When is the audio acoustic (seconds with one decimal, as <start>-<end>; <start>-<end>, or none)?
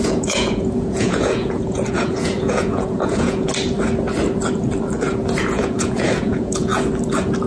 3.5-5.4; 6.7-7.5